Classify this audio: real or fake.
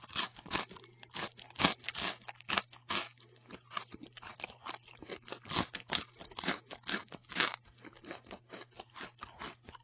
real